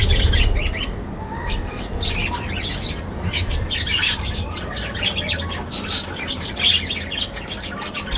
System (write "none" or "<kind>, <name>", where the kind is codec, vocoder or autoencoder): none